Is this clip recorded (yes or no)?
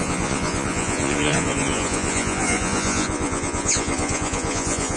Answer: no